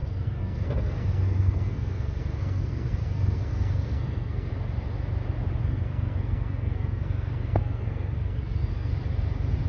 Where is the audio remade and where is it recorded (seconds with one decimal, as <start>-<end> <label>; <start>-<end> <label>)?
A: 0.0-4.5 remade; 4.5-5.6 recorded; 5.6-8.9 remade; 8.9-9.7 recorded